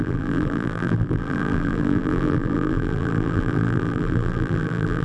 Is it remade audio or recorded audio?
remade